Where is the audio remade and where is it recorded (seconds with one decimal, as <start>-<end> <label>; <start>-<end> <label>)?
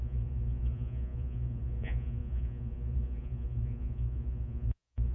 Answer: 0.0-5.1 remade